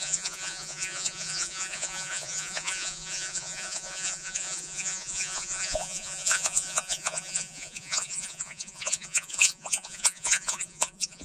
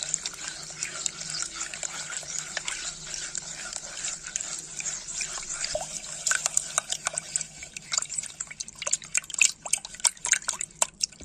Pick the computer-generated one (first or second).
first